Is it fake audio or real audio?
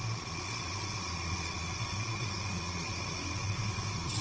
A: fake